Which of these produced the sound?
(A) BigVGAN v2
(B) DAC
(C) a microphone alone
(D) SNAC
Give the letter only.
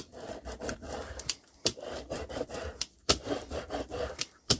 A